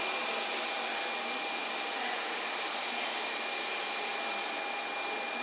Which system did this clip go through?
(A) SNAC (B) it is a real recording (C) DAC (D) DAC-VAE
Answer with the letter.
B